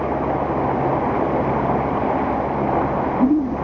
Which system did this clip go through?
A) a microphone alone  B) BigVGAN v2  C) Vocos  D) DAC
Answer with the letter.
A